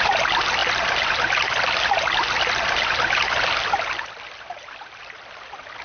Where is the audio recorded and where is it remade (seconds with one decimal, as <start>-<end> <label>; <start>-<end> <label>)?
0.0-5.8 recorded

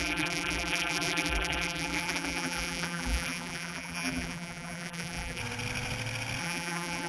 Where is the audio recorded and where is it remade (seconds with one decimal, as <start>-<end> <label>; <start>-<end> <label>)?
0.0-5.4 remade; 5.4-6.4 recorded; 6.4-7.1 remade

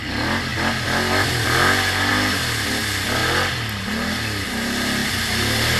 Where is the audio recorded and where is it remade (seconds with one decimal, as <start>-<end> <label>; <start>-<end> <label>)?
0.0-5.8 recorded

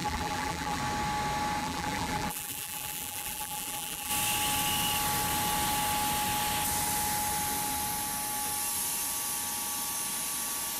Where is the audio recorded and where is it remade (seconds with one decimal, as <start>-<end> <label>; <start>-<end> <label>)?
0.0-0.8 remade; 0.8-1.6 recorded; 1.6-4.1 remade; 4.1-10.8 recorded